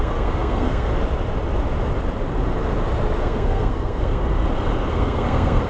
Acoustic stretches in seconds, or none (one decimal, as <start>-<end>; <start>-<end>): 0.9-3.2; 4.2-4.9